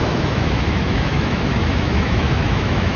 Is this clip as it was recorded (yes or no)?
no